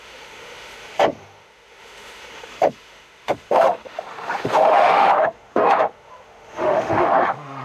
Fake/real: fake